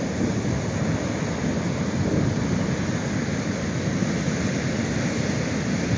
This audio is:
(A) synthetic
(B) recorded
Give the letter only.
B